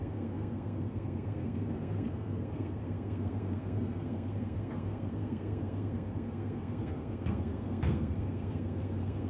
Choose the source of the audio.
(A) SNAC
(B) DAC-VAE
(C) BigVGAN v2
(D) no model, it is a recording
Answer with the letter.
A